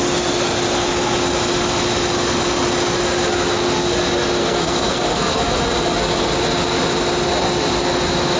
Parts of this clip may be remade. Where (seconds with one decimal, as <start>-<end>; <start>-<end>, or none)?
4.4-5.4